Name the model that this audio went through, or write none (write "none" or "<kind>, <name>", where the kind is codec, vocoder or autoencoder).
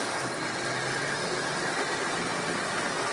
none